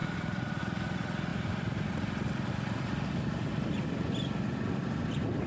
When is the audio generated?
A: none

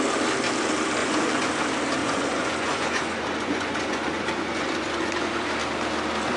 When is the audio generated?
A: 1.0-1.6 (vocoder, Vocos); 2.0-5.5

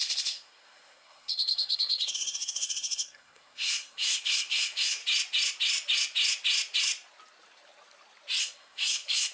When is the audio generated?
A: 0.0-5.0 (codec, SNAC); 8.4-9.3